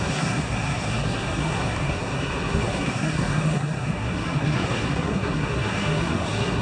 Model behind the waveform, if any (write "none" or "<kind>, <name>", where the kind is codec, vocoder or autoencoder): codec, SNAC